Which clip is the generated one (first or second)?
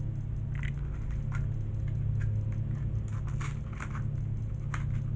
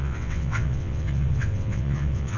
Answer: second